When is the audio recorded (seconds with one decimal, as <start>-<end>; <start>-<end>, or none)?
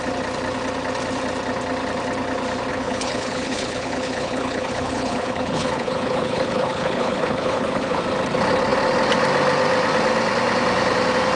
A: 0.0-2.7; 8.0-11.4